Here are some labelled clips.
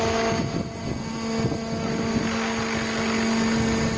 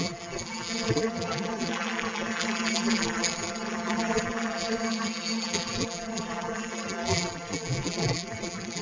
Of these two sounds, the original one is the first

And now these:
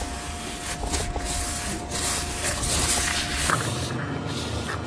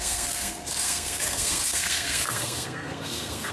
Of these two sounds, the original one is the first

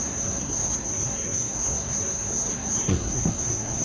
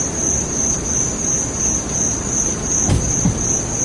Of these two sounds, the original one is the second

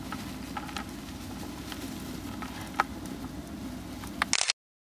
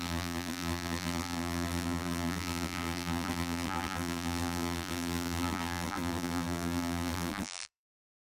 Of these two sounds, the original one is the first